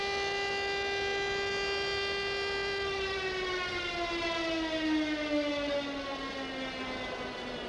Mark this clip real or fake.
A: real